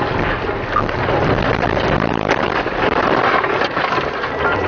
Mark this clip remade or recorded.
recorded